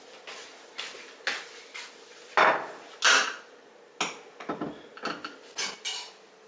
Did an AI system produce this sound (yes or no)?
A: no